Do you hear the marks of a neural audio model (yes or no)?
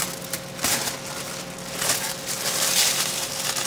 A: no